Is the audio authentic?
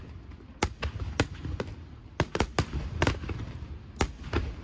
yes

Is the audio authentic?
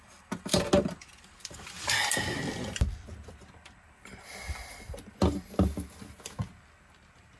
yes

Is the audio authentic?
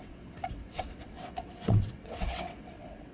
no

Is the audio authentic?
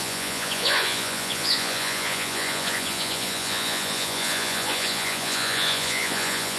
no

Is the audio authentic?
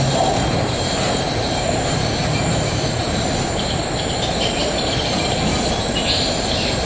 no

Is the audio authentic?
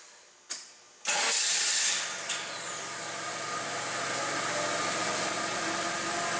yes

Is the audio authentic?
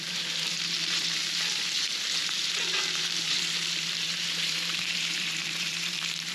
no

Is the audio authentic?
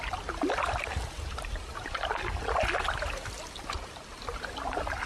yes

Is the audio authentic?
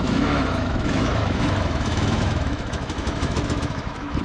no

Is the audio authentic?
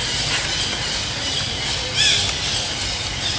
yes